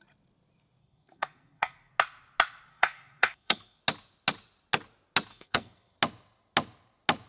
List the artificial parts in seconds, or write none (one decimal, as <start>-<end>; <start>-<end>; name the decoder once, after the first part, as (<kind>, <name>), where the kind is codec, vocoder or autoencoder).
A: 0.8-1.9 (codec, SNAC); 2.7-3.8; 5.3-5.9